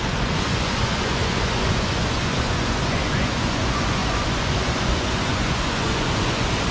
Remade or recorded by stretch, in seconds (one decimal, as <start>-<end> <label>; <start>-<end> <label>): 0.0-6.7 remade